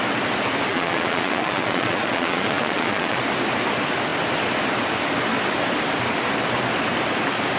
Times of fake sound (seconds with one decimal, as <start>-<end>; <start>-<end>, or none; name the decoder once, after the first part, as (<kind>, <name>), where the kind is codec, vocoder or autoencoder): 0.7-3.2 (vocoder, Vocos)